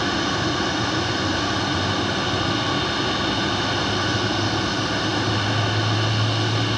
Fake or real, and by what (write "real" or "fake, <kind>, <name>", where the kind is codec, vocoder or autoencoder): real